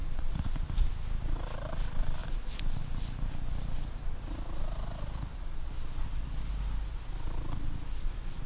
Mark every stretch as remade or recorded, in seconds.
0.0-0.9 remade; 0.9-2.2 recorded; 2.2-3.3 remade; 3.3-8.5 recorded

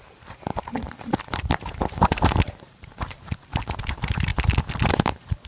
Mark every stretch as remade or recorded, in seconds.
0.0-4.3 remade; 4.3-4.9 recorded; 4.9-5.5 remade